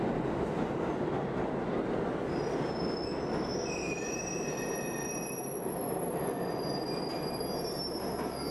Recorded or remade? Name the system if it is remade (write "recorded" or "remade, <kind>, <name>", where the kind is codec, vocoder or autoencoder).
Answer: recorded